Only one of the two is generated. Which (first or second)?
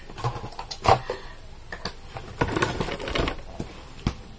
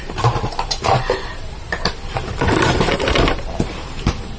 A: second